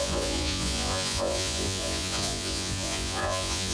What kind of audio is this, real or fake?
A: fake